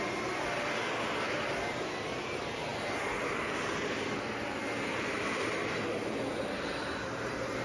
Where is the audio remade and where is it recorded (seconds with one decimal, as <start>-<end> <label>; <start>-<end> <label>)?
0.0-7.6 recorded